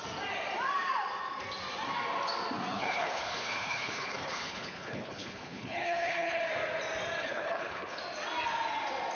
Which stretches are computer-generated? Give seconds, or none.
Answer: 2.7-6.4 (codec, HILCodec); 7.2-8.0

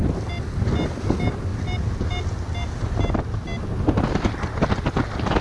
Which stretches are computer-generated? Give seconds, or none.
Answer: none

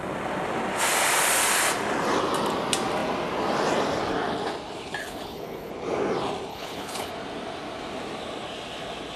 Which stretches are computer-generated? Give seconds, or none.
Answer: 5.0-5.7 (codec, HILCodec); 6.5-7.1

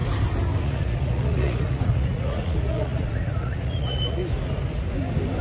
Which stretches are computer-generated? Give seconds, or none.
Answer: 0.6-4.2 (vocoder, Vocos)

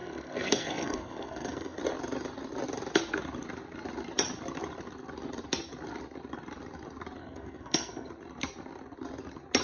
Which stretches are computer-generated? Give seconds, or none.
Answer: 0.0-1.8 (codec, SNAC); 7.2-8.1

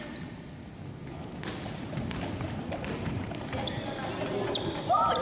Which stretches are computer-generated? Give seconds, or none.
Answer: 1.0-4.1 (vocoder, BigVGAN v2)